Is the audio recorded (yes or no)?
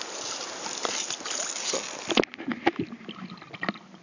yes